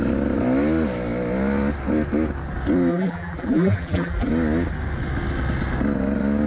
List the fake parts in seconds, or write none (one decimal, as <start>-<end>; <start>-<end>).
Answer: 2.9-4.3

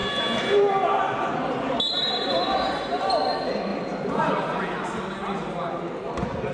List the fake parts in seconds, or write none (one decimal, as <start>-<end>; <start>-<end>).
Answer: 0.0-0.7; 3.7-4.3

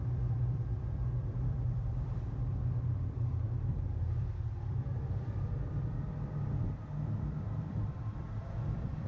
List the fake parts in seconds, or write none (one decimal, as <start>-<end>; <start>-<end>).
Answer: 0.0-6.8; 7.6-9.1

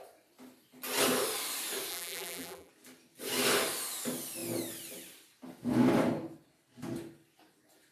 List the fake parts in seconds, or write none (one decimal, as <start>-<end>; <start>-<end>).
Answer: 1.9-2.7